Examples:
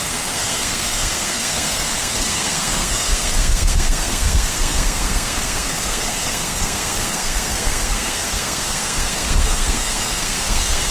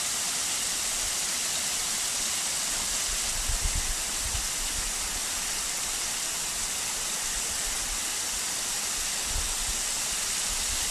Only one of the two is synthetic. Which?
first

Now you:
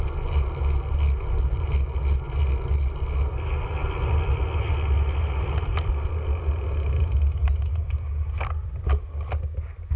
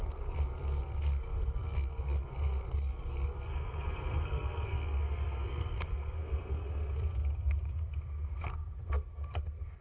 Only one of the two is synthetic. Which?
second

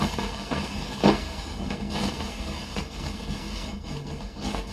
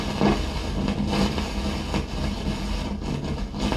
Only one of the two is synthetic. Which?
first